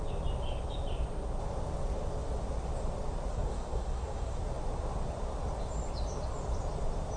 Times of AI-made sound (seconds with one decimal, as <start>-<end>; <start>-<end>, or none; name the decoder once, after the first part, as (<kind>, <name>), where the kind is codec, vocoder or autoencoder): 3.3-4.4 (codec, SNAC)